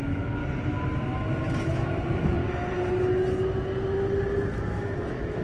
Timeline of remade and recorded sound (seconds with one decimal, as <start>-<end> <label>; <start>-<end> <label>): 0.0-0.4 remade; 0.4-1.7 recorded; 1.7-2.4 remade; 2.4-4.7 recorded; 4.7-5.4 remade